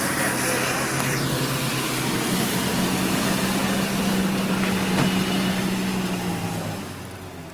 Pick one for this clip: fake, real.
real